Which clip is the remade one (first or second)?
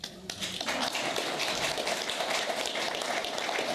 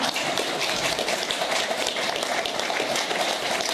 second